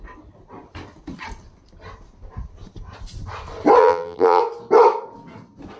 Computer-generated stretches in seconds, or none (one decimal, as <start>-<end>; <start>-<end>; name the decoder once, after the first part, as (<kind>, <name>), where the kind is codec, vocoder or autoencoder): 3.8-4.4 (vocoder, BigVGAN v2)